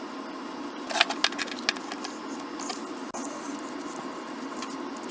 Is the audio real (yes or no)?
yes